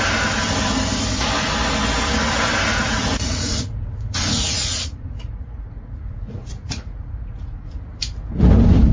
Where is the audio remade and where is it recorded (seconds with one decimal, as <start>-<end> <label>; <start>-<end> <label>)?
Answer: 0.0-2.7 recorded; 2.7-7.7 remade; 7.7-8.9 recorded